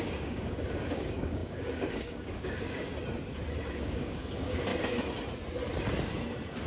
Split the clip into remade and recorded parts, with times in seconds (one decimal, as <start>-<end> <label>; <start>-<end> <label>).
0.0-2.9 remade; 2.9-3.7 recorded; 3.7-4.7 remade; 4.7-6.7 recorded